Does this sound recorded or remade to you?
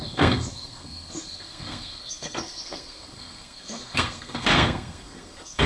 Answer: remade